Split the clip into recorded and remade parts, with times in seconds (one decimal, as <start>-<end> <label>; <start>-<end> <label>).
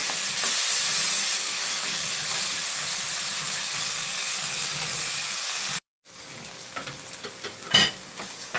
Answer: 0.0-1.1 recorded; 1.1-2.5 remade; 2.5-3.4 recorded; 3.4-6.8 remade; 6.8-8.2 recorded; 8.2-8.6 remade